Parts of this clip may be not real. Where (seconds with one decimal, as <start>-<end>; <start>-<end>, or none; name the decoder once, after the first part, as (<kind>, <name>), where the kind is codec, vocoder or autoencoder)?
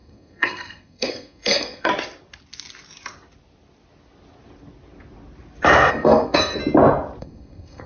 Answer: 0.0-1.9 (codec, SNAC); 5.9-6.6; 7.2-7.9